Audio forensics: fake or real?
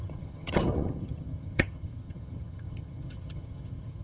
fake